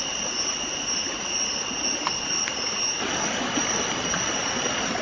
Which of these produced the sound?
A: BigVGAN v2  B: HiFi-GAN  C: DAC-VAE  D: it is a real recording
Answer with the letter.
D